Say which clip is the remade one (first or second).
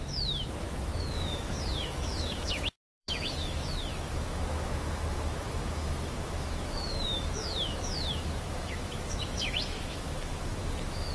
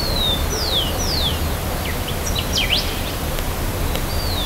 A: first